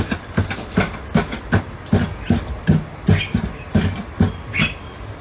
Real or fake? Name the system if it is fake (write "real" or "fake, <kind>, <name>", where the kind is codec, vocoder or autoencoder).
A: real